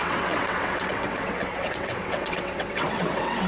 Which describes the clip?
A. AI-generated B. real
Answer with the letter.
A